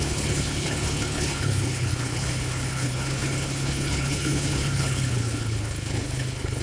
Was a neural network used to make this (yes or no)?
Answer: yes